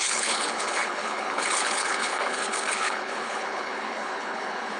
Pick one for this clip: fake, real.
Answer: fake